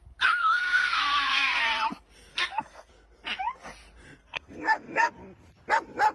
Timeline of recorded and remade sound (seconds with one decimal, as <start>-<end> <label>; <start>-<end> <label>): 0.0-0.4 recorded; 0.4-1.6 remade; 1.6-2.3 recorded; 2.3-2.9 remade; 2.9-4.2 recorded; 4.2-5.1 remade; 5.1-6.1 recorded